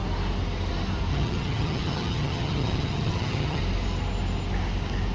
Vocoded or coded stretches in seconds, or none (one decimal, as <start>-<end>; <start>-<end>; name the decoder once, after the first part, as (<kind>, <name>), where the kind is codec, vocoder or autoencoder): 1.1-3.6 (vocoder, HiFi-GAN)